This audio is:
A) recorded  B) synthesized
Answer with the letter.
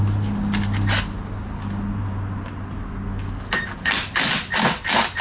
A